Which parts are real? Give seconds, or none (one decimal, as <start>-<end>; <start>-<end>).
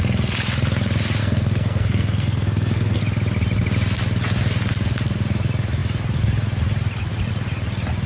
0.0-1.2; 3.0-8.1